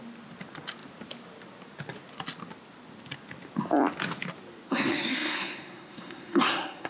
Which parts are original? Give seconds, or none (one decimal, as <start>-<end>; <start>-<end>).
0.0-4.7

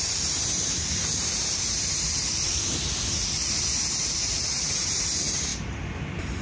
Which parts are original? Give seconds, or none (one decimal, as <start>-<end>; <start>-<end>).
5.5-6.4

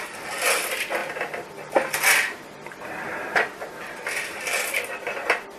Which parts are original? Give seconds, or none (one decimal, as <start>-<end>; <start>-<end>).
0.0-1.0; 4.4-5.6

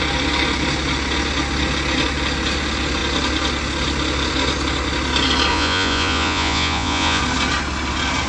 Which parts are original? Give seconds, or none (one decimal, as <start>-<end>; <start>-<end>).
0.0-5.5; 7.2-8.3

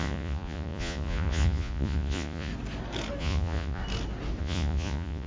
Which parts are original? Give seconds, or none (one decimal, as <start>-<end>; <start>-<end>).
2.5-3.2; 3.8-4.4

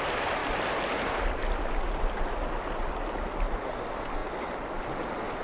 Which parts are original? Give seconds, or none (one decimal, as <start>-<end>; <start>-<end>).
0.0-5.4

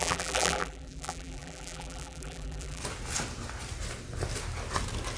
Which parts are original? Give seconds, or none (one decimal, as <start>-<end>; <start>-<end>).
2.8-5.2

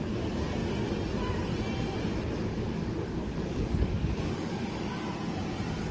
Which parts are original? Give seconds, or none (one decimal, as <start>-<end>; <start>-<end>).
0.0-2.5; 5.0-5.9